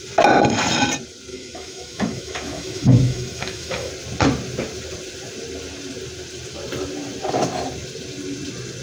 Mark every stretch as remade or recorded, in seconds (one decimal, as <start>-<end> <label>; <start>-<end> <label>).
0.0-1.3 recorded; 1.3-3.9 remade; 3.9-8.8 recorded